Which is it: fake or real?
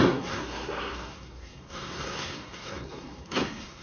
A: fake